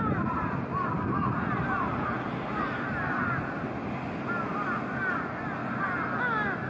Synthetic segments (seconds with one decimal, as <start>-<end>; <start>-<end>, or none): none